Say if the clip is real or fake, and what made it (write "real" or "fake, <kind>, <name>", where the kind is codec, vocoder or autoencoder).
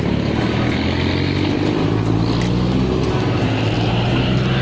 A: real